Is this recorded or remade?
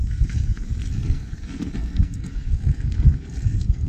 remade